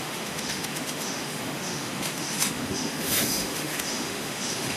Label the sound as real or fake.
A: fake